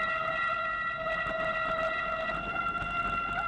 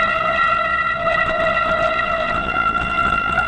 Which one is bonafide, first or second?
first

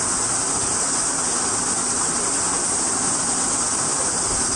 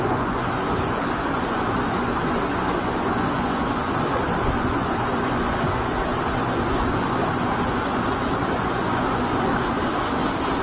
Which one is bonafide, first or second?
first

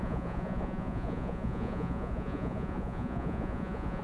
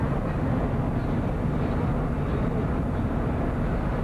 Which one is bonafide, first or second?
second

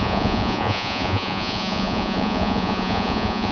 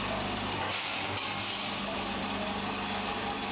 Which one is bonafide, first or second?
second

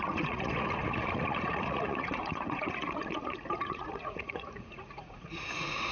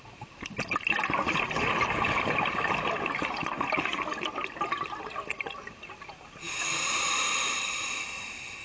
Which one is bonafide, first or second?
second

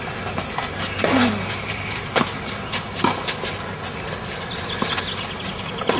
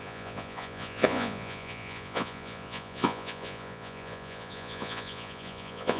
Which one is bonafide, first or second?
first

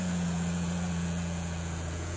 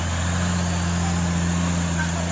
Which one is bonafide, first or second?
second